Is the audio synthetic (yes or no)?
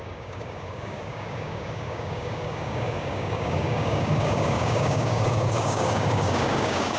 yes